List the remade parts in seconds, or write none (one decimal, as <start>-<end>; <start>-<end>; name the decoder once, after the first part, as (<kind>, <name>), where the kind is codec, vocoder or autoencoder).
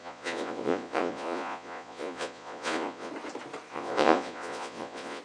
0.0-3.1 (vocoder, Vocos); 3.7-5.2